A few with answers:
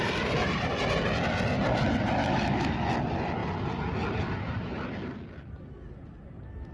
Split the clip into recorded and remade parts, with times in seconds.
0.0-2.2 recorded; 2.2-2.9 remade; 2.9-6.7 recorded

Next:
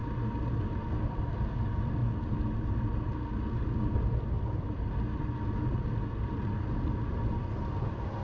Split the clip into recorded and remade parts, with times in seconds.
0.0-1.2 recorded; 1.2-2.0 remade; 2.0-5.8 recorded; 5.8-8.2 remade

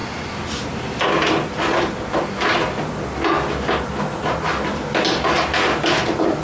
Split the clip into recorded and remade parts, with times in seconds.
0.0-6.4 recorded

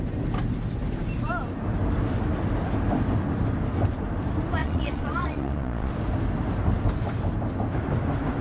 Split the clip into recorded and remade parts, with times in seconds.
0.0-4.6 recorded; 4.6-5.9 remade; 5.9-8.4 recorded

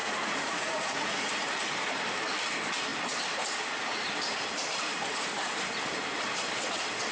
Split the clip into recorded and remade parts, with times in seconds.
0.0-1.3 remade; 1.3-7.1 recorded